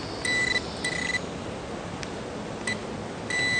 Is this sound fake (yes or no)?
no